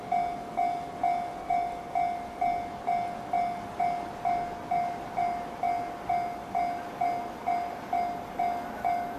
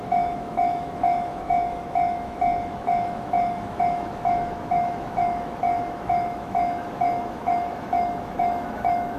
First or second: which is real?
first